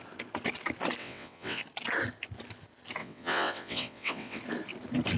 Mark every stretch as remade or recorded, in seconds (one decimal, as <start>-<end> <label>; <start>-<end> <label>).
0.0-1.0 recorded; 1.0-1.6 remade; 1.6-3.0 recorded; 3.0-4.4 remade; 4.4-5.2 recorded

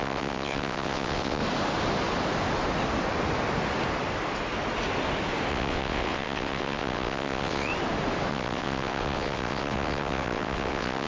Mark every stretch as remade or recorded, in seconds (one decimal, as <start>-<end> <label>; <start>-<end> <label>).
0.0-1.4 remade; 1.4-5.5 recorded; 5.5-7.7 remade; 7.7-8.3 recorded; 8.3-11.1 remade

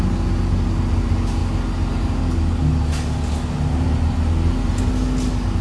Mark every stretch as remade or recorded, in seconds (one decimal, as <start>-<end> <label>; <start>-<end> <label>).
0.0-5.6 recorded